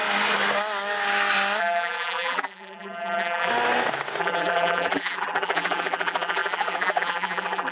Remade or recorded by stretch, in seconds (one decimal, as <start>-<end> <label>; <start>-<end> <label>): 0.0-1.6 recorded; 1.6-3.5 remade; 3.5-4.2 recorded; 4.2-7.7 remade